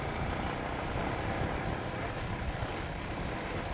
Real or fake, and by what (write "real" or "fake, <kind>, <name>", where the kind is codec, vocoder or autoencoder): fake, vocoder, BigVGAN v2